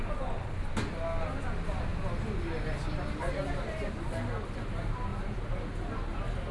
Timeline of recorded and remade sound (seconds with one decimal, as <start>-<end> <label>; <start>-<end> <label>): 0.0-6.5 recorded